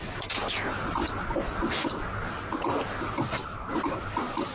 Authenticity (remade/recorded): recorded